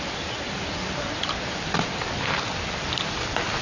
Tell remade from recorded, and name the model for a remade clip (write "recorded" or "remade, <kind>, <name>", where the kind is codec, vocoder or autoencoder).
recorded